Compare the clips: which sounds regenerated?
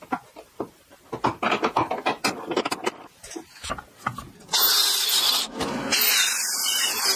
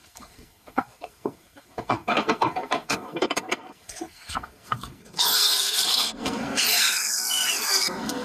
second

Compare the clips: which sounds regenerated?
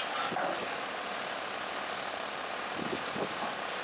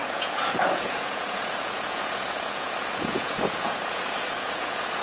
second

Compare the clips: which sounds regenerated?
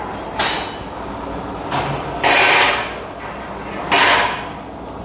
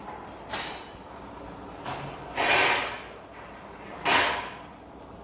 second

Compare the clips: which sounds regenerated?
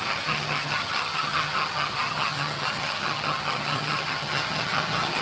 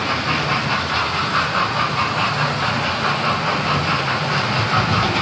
first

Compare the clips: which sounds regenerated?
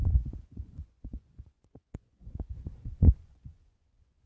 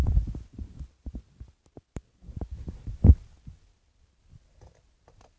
first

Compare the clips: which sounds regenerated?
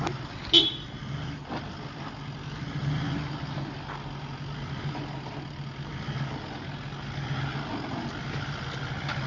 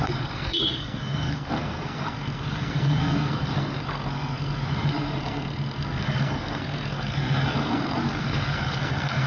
second